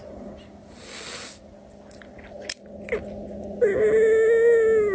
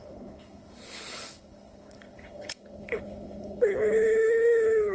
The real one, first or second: first